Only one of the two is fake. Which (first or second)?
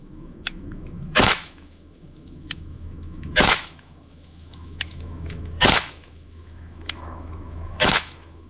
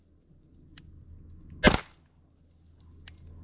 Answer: first